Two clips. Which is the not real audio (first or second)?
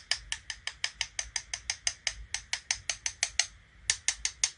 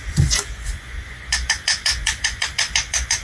second